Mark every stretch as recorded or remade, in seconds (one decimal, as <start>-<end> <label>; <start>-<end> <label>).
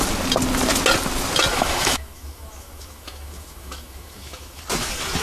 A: 0.0-1.5 recorded; 1.5-4.6 remade; 4.6-5.2 recorded